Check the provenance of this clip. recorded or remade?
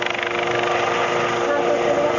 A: recorded